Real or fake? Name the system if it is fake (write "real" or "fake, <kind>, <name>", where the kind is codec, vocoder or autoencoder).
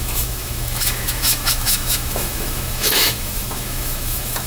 fake, autoencoder, DAC-VAE